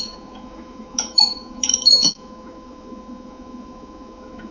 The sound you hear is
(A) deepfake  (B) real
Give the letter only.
A